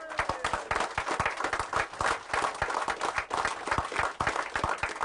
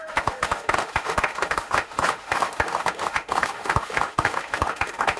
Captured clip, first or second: first